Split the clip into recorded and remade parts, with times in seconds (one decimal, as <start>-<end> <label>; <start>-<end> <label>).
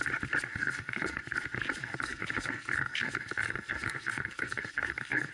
0.0-0.5 recorded; 0.5-1.2 remade; 1.2-1.8 recorded; 1.8-5.3 remade